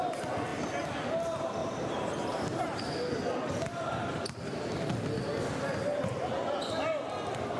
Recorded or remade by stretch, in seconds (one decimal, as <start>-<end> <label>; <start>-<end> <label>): 0.0-1.6 recorded; 1.6-2.5 remade; 2.5-3.7 recorded; 3.7-4.6 remade; 4.6-7.6 recorded